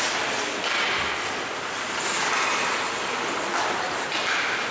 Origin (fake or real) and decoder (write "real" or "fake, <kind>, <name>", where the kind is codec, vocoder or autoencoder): real